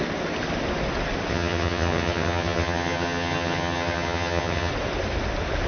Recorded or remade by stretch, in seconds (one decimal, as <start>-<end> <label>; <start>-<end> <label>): 0.0-1.3 recorded; 1.3-4.7 remade; 4.7-5.7 recorded